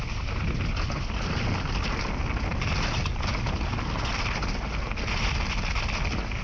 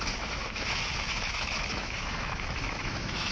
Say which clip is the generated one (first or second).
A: second